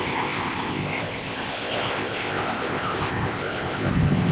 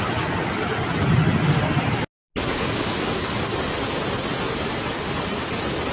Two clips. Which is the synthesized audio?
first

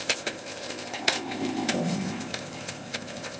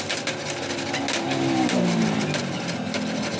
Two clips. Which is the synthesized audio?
first